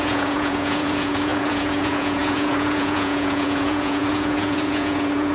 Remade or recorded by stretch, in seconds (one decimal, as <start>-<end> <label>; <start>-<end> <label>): 0.0-5.3 remade